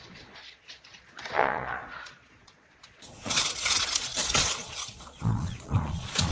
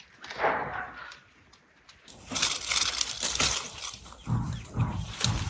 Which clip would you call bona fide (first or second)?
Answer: second